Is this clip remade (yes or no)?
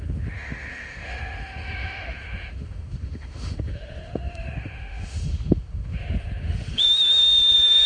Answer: yes